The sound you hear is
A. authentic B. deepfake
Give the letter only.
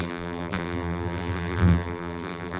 B